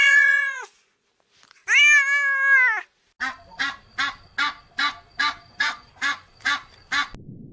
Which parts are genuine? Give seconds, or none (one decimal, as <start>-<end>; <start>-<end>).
1.1-5.5; 6.3-7.5